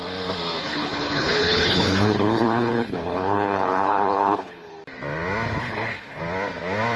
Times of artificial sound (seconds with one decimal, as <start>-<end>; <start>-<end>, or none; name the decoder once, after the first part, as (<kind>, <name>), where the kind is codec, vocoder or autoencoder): 0.6-4.7 (codec, HILCodec); 5.6-6.2